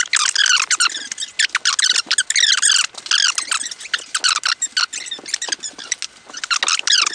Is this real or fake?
real